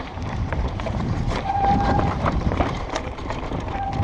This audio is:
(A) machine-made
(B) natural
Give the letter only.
A